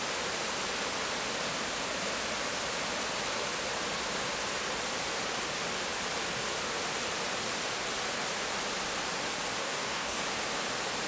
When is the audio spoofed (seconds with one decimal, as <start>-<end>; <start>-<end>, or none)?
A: 9.6-10.2